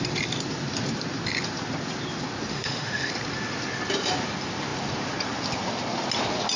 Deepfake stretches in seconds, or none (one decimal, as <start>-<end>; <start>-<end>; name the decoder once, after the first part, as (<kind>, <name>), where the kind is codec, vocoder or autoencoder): 2.5-3.1 (autoencoder, DAC-VAE)